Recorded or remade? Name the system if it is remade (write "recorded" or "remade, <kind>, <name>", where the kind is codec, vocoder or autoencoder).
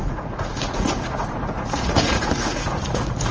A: remade, vocoder, Vocos